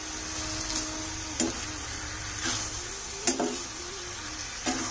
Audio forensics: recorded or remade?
recorded